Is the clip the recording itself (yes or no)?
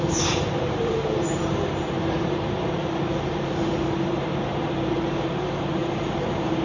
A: no